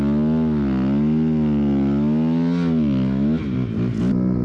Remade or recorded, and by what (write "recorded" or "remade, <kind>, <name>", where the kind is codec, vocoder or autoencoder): recorded